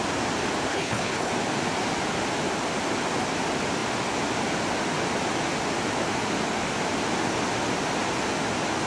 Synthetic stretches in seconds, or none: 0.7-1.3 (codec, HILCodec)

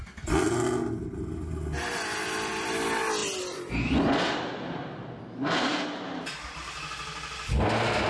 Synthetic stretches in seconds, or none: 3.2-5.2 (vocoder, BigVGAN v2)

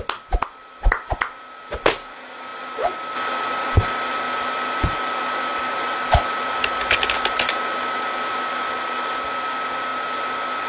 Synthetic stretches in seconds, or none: none

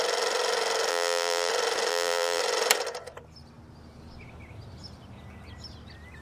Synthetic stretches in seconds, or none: 0.9-1.5 (vocoder, BigVGAN v2); 1.9-2.4

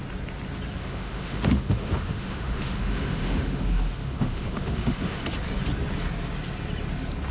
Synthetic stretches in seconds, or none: 0.8-5.2 (autoencoder, DAC-VAE)